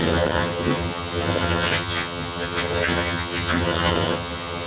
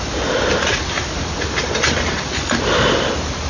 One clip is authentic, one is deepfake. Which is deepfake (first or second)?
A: first